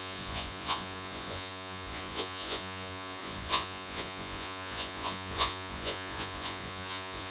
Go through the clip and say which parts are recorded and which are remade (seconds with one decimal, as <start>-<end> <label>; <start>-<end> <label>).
0.0-7.3 remade